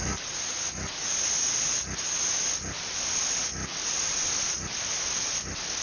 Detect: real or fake real